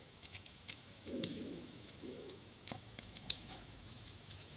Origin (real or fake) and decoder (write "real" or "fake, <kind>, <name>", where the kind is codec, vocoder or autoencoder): fake, autoencoder, DAC-VAE